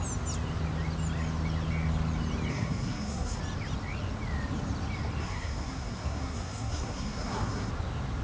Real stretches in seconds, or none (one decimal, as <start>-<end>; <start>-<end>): 0.0-2.5; 3.4-5.2; 7.7-8.2